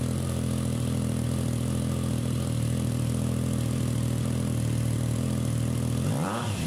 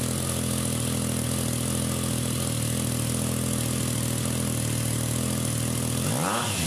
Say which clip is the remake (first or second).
first